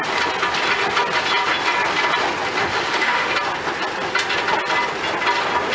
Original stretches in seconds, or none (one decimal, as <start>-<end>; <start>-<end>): 0.0-2.6; 3.3-5.7